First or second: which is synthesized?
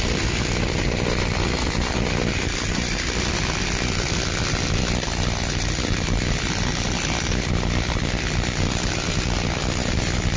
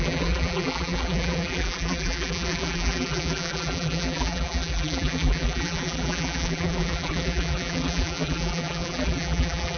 second